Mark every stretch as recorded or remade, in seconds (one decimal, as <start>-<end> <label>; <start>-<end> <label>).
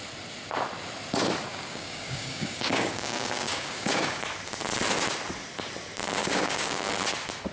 0.0-1.5 recorded; 1.5-4.2 remade; 4.2-6.2 recorded; 6.2-6.9 remade; 6.9-7.5 recorded